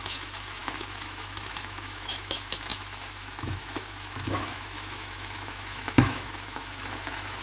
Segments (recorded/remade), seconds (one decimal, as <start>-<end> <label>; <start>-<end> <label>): 0.0-7.4 remade